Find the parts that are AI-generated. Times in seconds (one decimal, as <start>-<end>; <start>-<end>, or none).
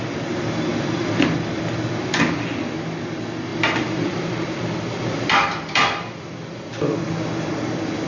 0.7-2.2; 3.5-7.5